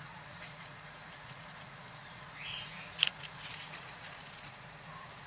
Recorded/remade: remade